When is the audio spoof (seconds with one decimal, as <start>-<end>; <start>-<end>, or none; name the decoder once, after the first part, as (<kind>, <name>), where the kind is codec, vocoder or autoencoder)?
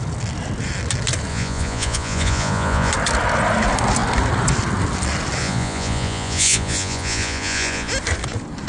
1.3-2.9 (vocoder, Vocos); 5.4-7.9